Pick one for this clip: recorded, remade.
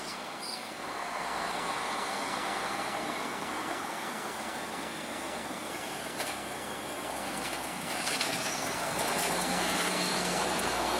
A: remade